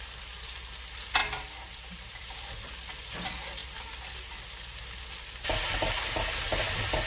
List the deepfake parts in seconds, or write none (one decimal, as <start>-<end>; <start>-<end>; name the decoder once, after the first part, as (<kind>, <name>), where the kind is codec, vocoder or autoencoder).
none

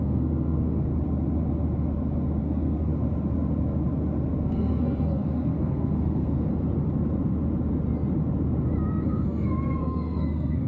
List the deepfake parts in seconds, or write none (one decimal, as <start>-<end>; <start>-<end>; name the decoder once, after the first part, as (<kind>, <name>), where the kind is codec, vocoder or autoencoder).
0.0-0.9 (codec, SNAC); 2.4-2.9; 4.4-6.5; 8.9-10.7